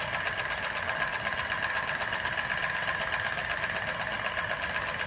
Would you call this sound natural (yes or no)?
yes